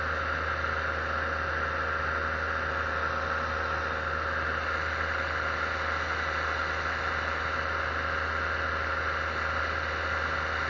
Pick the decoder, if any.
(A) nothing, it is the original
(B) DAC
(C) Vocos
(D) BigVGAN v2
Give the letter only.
A